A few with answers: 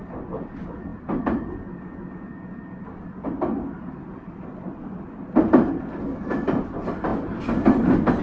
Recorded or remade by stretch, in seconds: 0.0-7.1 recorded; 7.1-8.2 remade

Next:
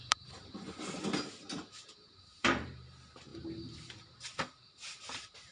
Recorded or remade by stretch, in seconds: 0.0-5.5 remade

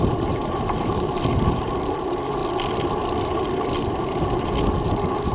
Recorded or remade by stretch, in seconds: 0.0-2.4 remade; 2.4-3.8 recorded; 3.8-5.3 remade

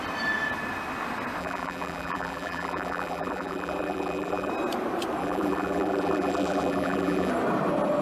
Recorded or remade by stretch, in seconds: 0.0-1.4 recorded; 1.4-4.5 remade; 4.5-5.2 recorded; 5.2-7.3 remade; 7.3-8.0 recorded

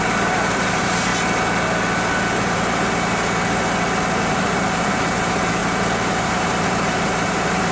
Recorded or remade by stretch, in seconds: 0.0-1.1 remade; 1.1-4.3 recorded; 4.3-5.6 remade; 5.6-6.1 recorded; 6.1-7.7 remade